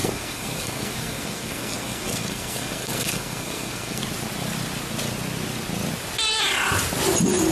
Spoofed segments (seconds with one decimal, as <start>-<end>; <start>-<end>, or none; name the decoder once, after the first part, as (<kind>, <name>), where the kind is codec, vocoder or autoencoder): 0.0-4.0 (codec, SNAC)

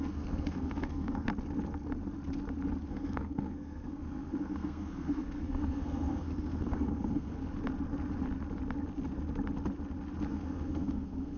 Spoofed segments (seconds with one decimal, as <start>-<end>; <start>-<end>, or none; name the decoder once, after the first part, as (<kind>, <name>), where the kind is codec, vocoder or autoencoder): 0.0-1.3 (codec, SNAC); 2.9-7.4; 10.3-11.4